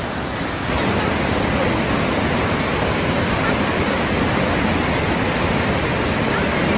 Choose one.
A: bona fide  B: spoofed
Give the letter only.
A